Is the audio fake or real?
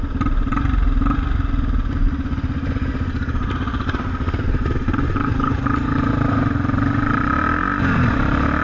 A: fake